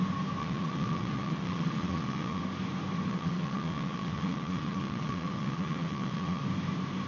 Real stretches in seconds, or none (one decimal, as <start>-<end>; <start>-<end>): 0.0-0.4; 2.4-3.1; 6.4-7.1

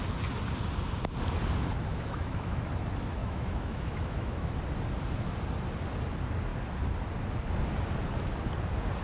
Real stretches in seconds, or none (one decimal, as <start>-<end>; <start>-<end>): 0.0-1.9; 2.6-3.2; 4.6-9.0

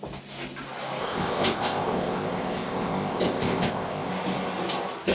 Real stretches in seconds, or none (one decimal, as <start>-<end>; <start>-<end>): 0.0-1.0; 4.1-5.1

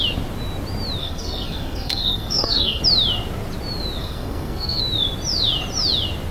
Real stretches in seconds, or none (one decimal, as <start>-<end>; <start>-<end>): 0.0-1.0; 2.8-4.0; 4.8-6.3

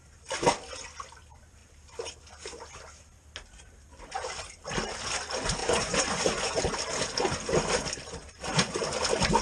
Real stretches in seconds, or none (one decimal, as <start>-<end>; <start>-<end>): 0.0-5.6; 6.6-8.2; 8.8-9.4